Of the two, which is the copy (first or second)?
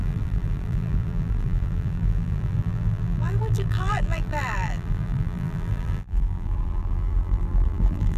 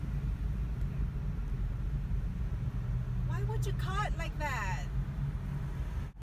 first